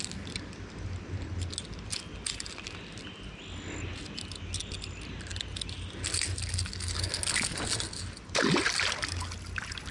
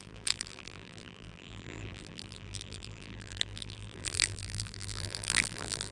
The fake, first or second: second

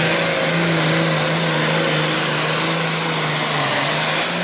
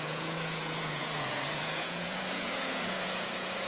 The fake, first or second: second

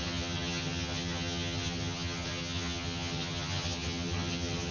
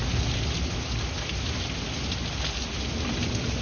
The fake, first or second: first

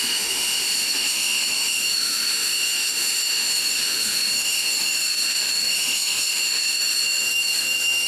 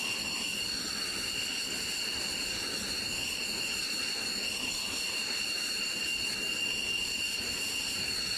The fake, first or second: first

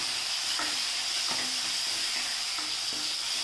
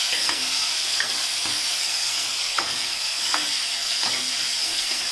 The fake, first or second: second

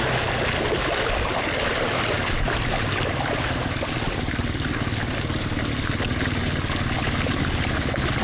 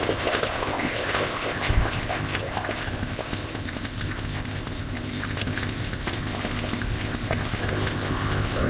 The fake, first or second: second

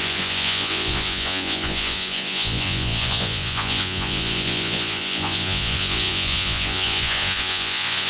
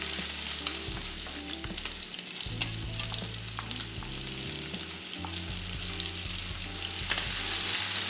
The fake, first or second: first